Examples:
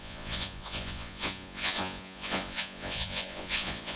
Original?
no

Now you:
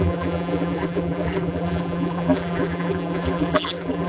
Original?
no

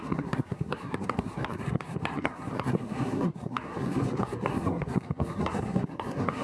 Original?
no